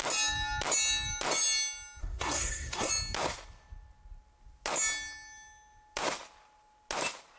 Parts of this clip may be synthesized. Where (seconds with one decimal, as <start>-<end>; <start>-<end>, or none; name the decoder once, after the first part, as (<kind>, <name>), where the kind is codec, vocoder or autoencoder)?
2.0-2.9 (codec, SNAC)